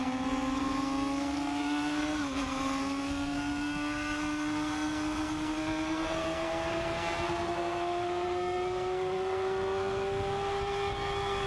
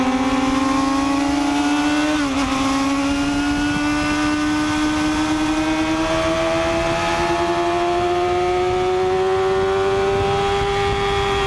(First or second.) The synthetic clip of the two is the first